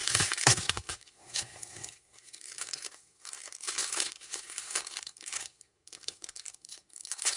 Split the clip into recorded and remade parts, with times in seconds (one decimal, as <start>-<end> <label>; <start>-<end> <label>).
0.0-7.4 remade